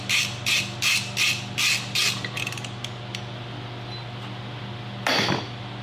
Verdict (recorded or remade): recorded